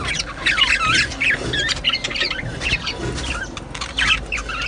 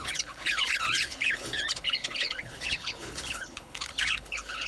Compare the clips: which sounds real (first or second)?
first